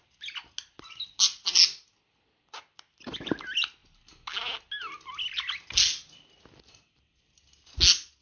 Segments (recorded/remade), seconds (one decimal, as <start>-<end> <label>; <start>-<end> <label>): 0.0-8.2 recorded